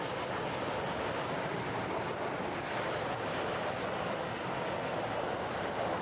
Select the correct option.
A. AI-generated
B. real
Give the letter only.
B